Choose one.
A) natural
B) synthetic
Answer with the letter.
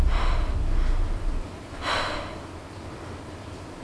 A